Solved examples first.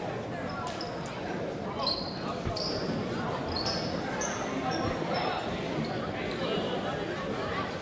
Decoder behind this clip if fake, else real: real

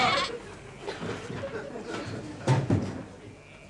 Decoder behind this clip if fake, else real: real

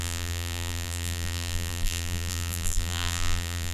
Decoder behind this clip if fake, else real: fake, vocoder, BigVGAN v2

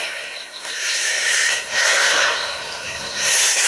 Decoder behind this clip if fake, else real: fake, codec, SNAC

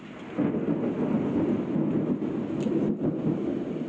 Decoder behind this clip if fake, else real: real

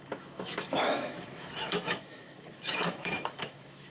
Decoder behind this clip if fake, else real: fake, autoencoder, DAC-VAE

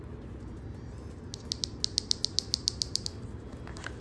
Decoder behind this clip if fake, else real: real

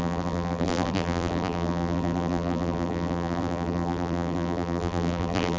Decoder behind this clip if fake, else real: fake, vocoder, BigVGAN v2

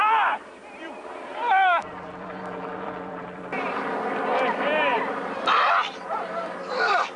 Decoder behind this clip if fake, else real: fake, vocoder, BigVGAN v2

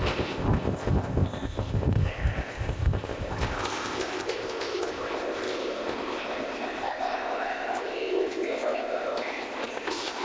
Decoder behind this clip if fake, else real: fake, codec, ZipCodec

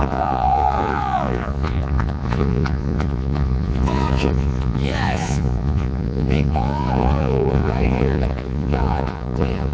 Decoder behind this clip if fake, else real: fake, vocoder, Vocos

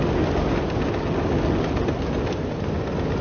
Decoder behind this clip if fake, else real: real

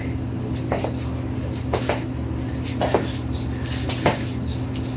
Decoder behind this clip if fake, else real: real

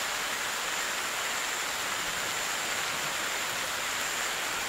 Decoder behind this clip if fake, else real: real